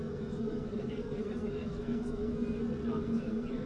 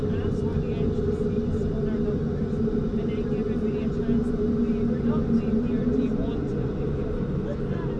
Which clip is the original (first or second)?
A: second